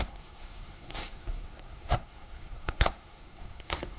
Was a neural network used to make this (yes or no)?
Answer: yes